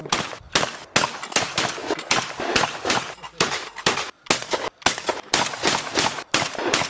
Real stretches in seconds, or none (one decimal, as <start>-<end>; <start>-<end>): 0.0-6.9